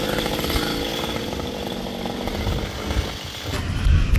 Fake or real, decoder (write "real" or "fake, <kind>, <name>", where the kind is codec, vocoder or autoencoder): real